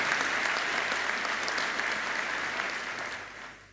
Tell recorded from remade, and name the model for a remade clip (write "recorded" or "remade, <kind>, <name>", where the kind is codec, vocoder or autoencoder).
recorded